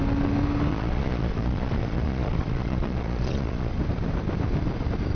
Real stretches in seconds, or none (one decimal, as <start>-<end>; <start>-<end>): 0.0-0.7; 3.7-5.2